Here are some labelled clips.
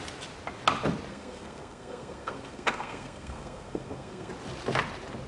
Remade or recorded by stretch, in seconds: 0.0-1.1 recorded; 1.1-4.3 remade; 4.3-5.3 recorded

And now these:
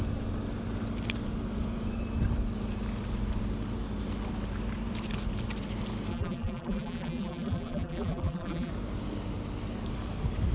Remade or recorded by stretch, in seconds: 0.0-6.1 recorded; 6.1-8.7 remade; 8.7-10.5 recorded

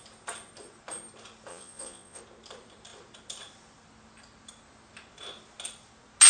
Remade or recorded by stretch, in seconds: 0.0-1.5 recorded; 1.5-2.2 remade; 2.2-6.3 recorded

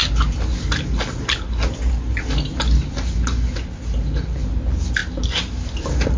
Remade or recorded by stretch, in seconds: 0.0-6.2 recorded